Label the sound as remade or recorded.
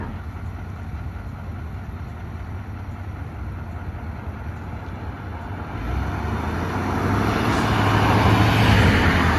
recorded